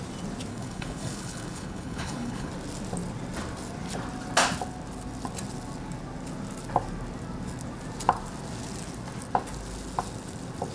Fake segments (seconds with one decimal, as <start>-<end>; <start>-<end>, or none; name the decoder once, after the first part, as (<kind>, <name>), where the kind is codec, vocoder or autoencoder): 0.5-2.5 (codec, HILCodec)